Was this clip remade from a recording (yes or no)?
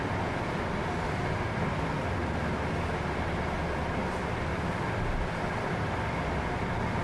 no